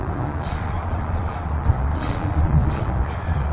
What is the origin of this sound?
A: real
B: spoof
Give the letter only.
B